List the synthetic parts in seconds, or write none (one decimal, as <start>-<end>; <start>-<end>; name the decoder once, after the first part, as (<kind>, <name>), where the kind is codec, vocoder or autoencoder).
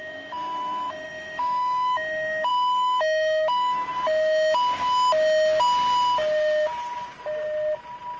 0.0-3.9 (autoencoder, DAC-VAE)